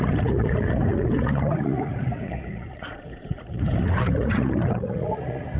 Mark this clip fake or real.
fake